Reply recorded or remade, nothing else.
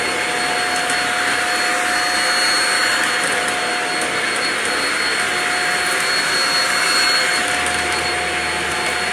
recorded